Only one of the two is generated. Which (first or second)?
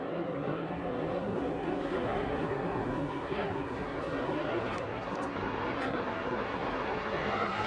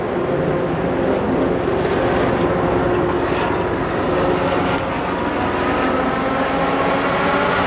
first